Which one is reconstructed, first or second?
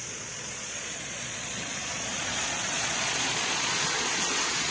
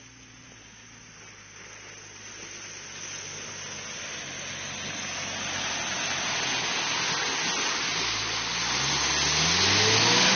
first